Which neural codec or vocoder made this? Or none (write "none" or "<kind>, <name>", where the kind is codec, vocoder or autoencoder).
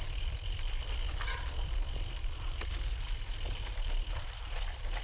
vocoder, BigVGAN v2